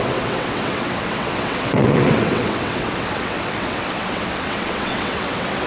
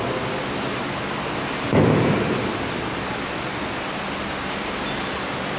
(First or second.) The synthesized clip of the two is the first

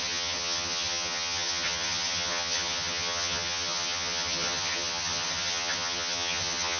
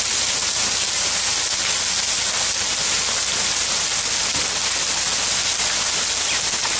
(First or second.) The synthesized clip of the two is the first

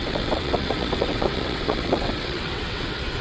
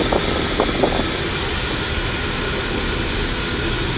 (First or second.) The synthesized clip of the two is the first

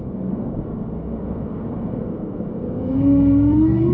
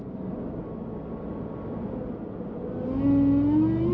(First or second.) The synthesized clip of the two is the first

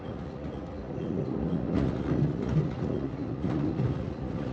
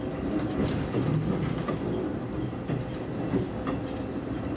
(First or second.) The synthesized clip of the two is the first